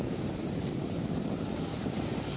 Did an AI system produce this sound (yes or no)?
no